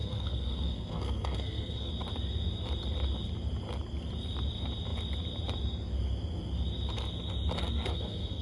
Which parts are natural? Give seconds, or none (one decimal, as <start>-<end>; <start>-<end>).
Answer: 1.9-7.6

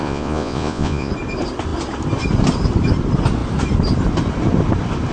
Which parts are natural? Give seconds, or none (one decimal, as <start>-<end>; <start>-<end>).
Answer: 1.1-5.1

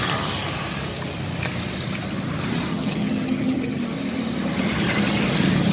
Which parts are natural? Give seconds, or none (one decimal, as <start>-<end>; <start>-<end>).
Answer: 0.0-2.7; 3.8-5.7

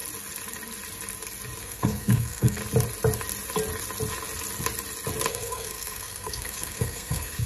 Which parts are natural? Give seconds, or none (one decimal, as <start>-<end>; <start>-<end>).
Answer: 0.0-1.6; 2.6-5.3